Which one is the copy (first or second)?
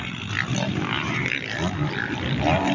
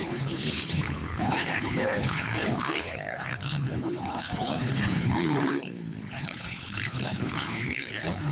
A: second